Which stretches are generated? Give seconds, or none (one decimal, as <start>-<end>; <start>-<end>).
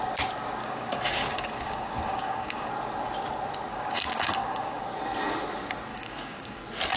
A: 0.6-2.7; 3.7-4.8; 5.9-6.6